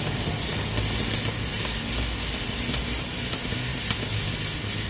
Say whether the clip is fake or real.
real